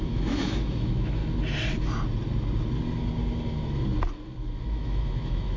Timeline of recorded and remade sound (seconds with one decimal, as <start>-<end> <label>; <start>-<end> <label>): 0.0-1.2 remade; 1.2-4.6 recorded; 4.6-5.6 remade